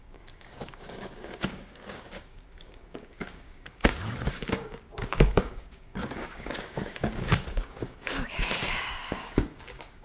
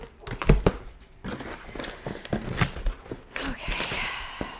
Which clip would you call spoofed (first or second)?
first